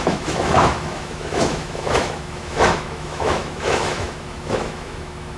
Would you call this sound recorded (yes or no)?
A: no